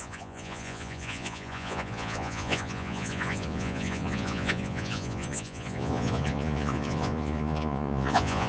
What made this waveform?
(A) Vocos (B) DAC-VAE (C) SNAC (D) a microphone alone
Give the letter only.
A